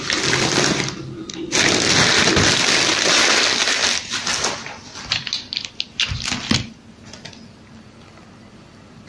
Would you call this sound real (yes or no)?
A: yes